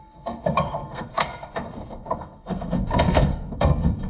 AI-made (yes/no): yes